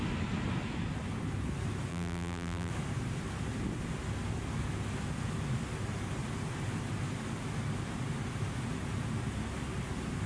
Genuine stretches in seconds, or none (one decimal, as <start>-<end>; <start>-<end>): 0.0-1.9; 2.7-10.3